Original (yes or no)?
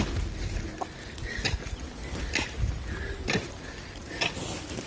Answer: yes